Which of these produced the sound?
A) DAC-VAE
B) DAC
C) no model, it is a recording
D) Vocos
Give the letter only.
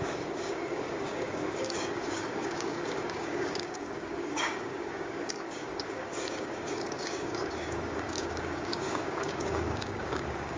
B